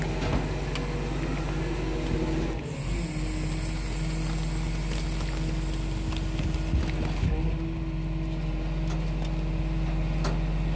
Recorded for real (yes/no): yes